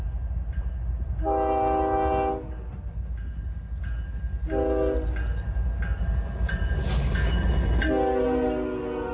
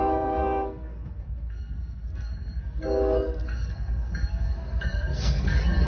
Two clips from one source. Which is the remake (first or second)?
second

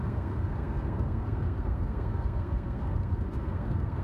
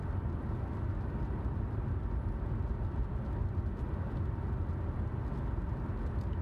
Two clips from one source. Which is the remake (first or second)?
first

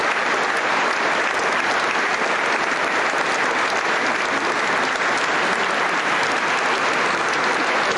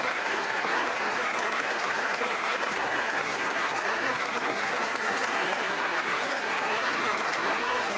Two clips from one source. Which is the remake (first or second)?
second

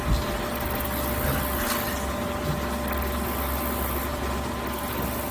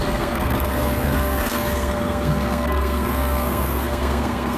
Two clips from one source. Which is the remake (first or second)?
second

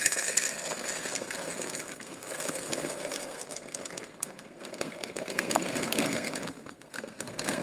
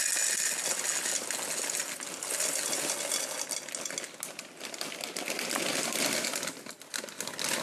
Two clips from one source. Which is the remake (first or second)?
first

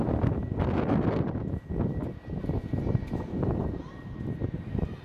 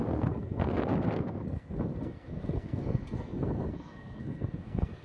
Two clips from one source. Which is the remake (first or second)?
second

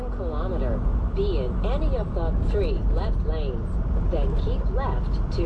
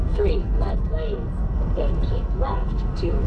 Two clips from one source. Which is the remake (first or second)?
second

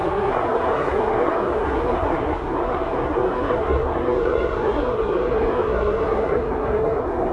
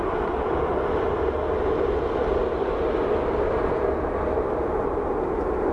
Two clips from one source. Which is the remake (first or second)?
first